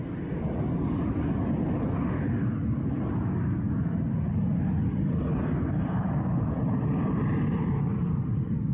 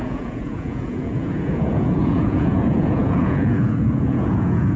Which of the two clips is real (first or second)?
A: first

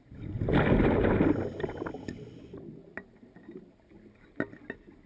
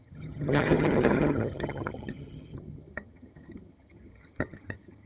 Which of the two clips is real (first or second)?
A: first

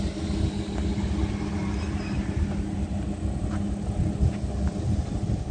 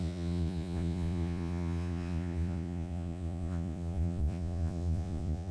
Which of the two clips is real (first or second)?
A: first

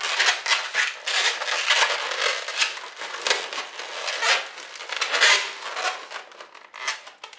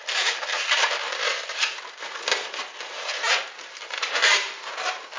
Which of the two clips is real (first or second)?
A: first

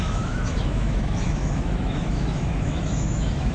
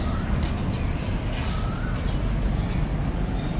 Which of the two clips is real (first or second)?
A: second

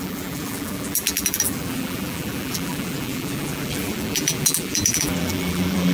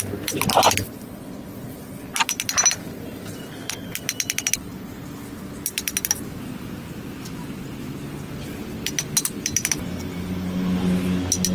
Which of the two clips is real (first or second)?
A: second